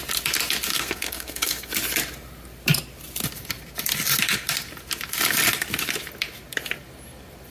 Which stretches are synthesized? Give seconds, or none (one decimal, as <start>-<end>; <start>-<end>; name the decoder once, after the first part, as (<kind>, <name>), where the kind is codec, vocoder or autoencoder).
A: 0.7-1.7 (codec, SNAC)